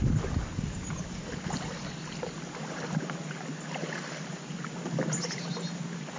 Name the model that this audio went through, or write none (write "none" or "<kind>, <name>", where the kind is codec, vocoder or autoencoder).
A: none